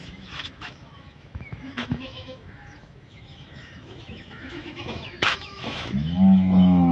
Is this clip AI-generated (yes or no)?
yes